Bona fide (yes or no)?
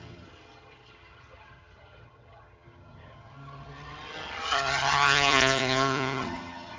no